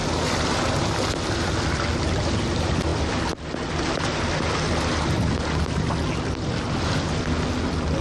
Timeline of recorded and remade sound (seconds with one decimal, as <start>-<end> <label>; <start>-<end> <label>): 0.0-8.0 recorded